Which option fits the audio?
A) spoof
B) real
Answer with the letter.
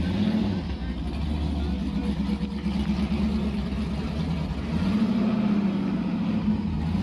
B